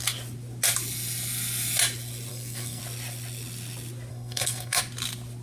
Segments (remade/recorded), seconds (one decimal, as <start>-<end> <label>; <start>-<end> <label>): 0.0-2.3 recorded; 2.3-2.8 remade; 2.8-4.1 recorded; 4.1-4.8 remade; 4.8-5.4 recorded